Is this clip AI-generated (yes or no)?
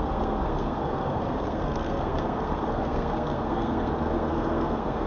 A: yes